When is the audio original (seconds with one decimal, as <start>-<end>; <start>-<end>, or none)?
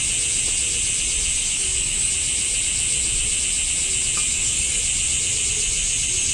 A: 0.0-1.3; 2.1-4.3; 4.8-6.3